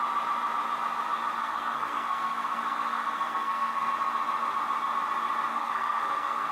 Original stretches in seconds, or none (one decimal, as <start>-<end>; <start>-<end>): 0.0-1.4; 3.9-5.5